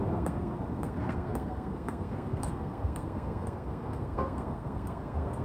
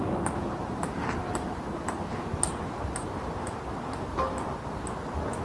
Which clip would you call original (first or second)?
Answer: second